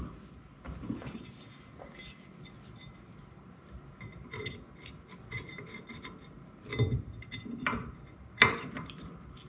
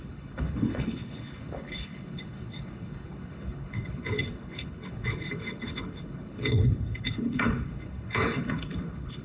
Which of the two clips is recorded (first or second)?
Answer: first